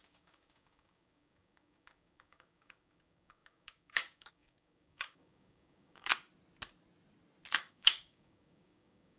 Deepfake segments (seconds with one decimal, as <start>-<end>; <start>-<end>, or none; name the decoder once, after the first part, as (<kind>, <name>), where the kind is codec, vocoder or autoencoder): 0.0-6.1 (codec, DAC); 7.7-9.2